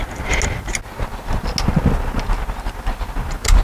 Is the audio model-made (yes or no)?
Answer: no